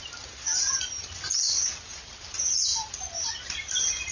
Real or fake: real